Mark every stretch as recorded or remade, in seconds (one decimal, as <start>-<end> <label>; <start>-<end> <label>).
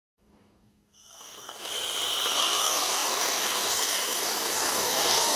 0.0-1.7 remade; 1.7-2.4 recorded; 2.4-5.4 remade